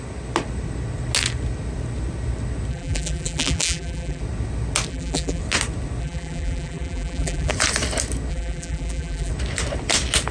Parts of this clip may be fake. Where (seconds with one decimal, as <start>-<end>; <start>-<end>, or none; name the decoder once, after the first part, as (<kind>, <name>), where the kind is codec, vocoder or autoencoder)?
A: 2.7-4.2 (vocoder, BigVGAN v2); 4.9-5.4; 6.0-7.5; 8.3-9.3